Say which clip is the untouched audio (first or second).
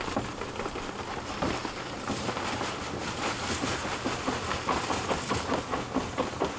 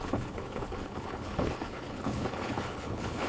first